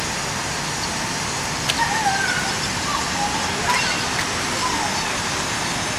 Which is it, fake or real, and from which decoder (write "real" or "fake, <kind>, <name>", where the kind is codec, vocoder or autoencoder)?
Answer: real